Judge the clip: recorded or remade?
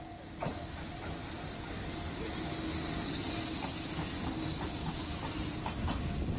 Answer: recorded